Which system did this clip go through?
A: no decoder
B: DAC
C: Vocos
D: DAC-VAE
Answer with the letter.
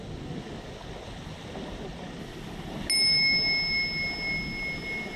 A